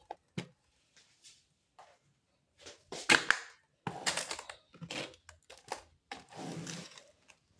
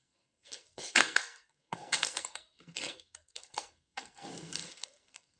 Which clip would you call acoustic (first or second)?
first